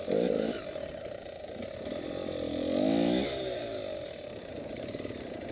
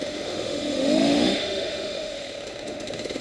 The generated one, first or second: second